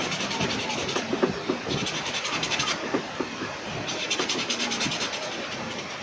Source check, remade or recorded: remade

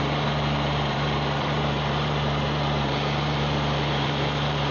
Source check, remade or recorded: remade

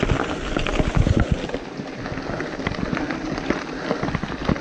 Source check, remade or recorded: recorded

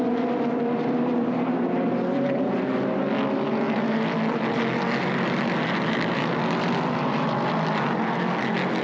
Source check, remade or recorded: remade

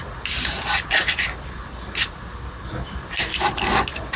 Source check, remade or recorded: recorded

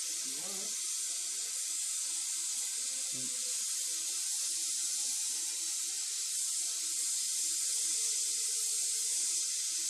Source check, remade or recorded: recorded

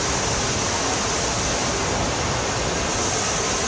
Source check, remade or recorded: recorded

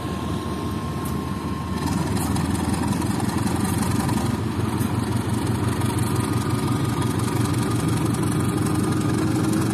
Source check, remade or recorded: recorded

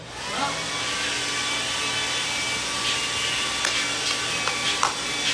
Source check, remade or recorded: recorded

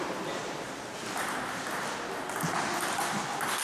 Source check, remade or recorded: recorded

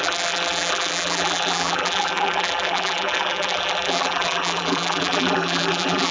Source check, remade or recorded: remade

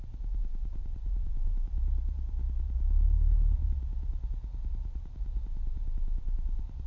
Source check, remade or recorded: remade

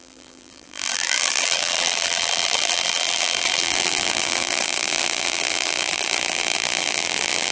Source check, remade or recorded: remade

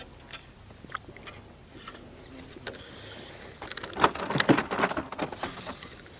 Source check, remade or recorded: recorded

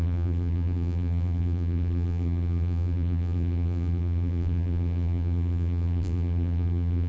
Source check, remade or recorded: remade